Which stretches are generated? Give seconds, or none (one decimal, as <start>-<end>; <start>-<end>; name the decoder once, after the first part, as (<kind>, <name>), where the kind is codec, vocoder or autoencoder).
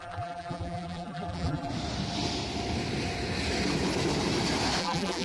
0.0-1.7 (vocoder, BigVGAN v2); 4.8-5.2